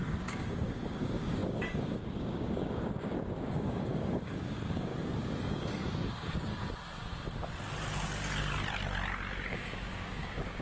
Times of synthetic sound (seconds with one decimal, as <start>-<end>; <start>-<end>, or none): 0.0-4.9; 6.1-6.5; 9.5-10.6